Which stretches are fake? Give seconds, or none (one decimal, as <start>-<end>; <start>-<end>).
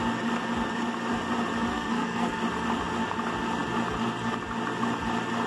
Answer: 1.7-2.4